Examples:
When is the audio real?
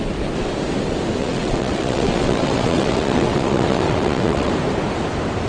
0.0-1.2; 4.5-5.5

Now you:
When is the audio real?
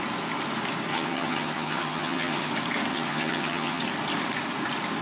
0.0-0.9; 2.5-2.9; 3.8-5.0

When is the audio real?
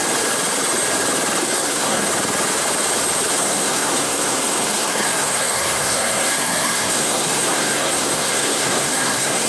0.0-1.4; 2.1-3.3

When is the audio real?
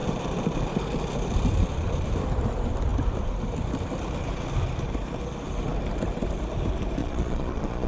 0.0-7.0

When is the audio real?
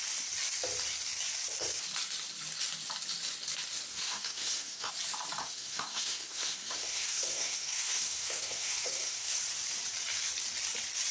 0.0-3.9; 4.9-5.4; 9.4-11.1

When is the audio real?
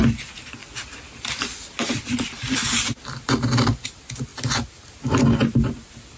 0.0-6.2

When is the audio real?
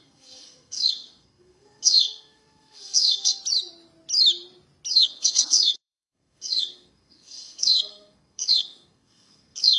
3.4-4.9